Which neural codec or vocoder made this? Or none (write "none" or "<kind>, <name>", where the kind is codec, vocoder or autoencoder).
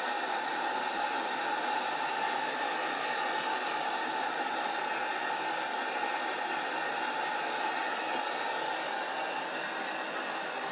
none